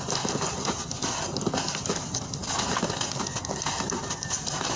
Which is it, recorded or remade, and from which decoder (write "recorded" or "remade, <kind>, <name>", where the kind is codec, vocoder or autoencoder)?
recorded